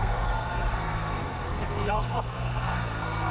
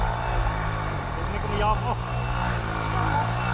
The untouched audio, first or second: second